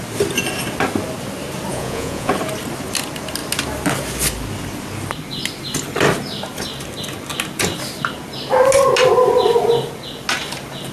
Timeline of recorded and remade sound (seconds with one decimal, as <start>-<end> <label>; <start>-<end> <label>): 0.0-1.7 recorded; 1.7-2.3 remade; 2.3-10.9 recorded